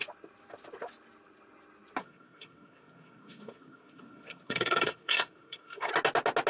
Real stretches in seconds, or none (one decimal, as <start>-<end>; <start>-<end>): 0.0-2.0; 5.9-6.5